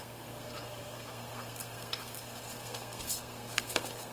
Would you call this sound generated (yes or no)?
yes